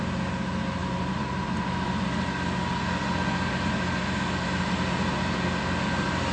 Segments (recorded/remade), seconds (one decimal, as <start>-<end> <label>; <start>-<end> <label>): 0.0-6.3 recorded